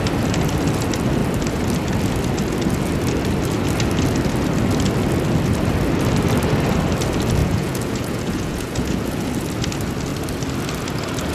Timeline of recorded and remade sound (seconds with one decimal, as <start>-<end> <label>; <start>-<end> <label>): 0.0-7.4 recorded; 7.4-9.3 remade; 9.3-11.3 recorded